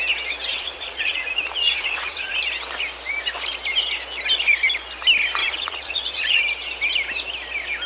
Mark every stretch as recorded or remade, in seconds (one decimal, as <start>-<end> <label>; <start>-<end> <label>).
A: 0.0-0.5 recorded; 0.5-2.3 remade; 2.3-5.4 recorded; 5.4-6.4 remade; 6.4-7.9 recorded